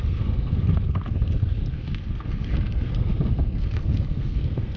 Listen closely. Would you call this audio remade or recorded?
remade